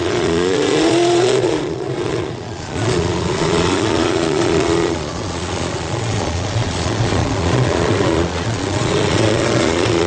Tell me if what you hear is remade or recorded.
remade